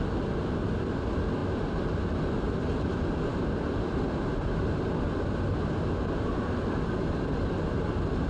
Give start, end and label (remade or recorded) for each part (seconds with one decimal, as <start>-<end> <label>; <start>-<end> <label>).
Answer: 0.0-8.3 recorded